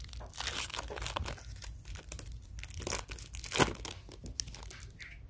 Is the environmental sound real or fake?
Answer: real